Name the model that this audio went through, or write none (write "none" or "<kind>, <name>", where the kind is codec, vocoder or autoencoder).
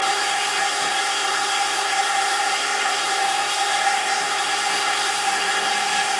codec, SNAC